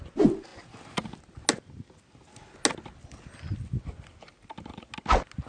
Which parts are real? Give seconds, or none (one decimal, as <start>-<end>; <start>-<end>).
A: 0.0-5.5